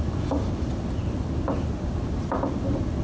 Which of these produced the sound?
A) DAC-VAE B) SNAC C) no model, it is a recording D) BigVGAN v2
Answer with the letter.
C